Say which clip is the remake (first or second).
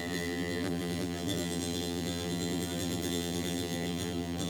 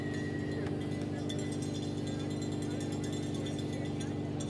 first